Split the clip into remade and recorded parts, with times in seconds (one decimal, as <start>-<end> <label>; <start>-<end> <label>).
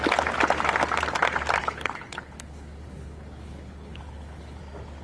0.0-1.6 recorded; 1.6-4.6 remade; 4.6-5.0 recorded